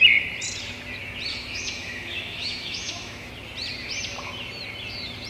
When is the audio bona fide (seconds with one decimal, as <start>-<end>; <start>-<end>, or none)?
0.0-1.3; 3.3-5.3